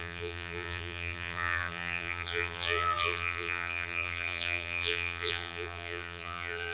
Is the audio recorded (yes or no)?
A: no